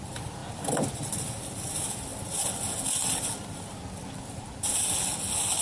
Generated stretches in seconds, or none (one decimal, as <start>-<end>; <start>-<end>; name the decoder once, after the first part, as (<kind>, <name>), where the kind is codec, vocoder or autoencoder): none